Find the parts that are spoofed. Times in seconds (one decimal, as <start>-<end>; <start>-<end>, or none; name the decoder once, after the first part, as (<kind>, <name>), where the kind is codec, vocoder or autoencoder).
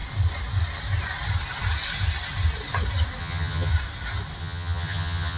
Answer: 3.2-3.7 (vocoder, HiFi-GAN); 4.4-5.4